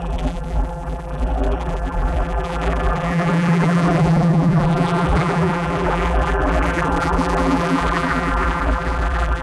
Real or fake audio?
fake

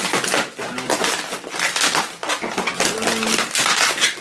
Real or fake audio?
real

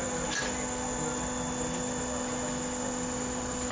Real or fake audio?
real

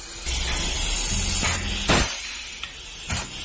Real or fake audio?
real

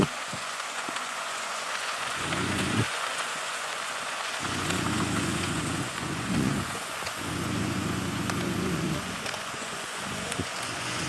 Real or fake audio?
fake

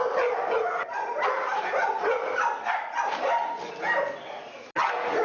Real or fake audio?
real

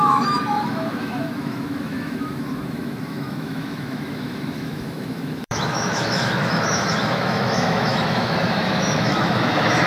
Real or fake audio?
fake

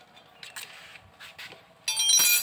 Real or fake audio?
real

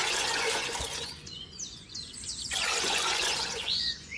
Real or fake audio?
fake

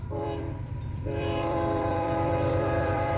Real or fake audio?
fake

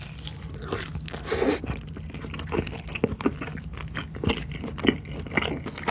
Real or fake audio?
real